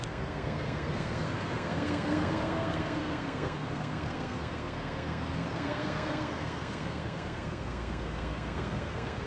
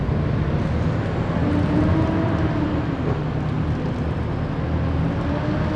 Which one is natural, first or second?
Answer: second